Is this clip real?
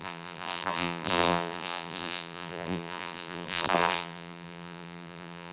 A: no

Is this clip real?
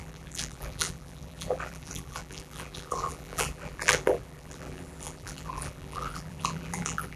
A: no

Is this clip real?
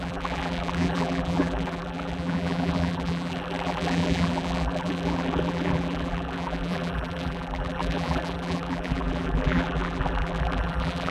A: no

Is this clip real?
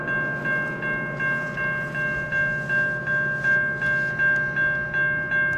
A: yes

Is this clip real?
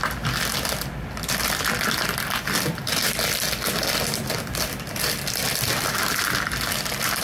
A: yes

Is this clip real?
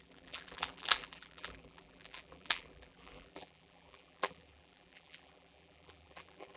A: no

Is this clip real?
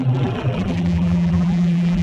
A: no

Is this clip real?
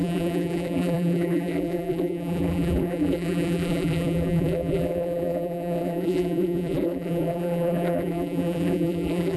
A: no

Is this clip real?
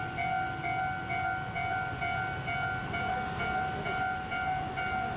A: yes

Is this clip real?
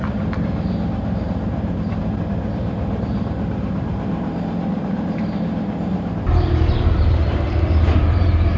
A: no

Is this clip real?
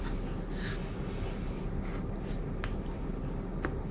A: yes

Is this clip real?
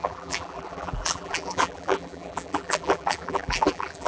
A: no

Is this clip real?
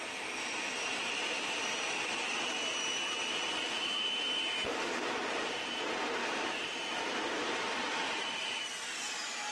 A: no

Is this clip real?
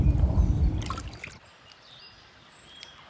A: yes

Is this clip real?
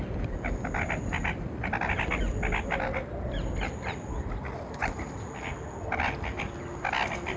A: yes